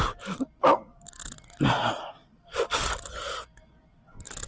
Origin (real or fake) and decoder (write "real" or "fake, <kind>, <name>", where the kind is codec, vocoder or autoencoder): real